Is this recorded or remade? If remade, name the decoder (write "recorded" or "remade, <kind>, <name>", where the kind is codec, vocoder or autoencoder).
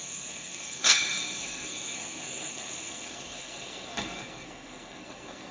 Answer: remade, codec, SNAC